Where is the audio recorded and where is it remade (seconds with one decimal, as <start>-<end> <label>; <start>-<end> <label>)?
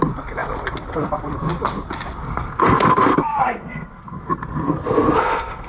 0.0-2.3 recorded; 2.3-5.7 remade